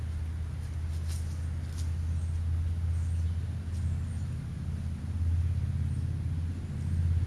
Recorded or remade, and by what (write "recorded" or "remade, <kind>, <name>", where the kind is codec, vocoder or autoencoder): recorded